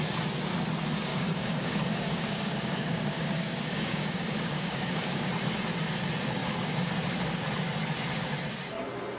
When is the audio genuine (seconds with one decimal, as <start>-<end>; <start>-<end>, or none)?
0.0-1.1; 5.3-6.4; 6.9-9.2